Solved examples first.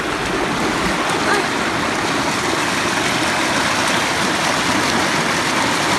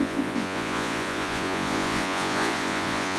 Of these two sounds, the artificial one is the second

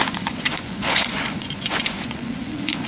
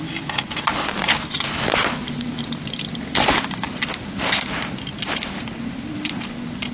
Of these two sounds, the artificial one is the first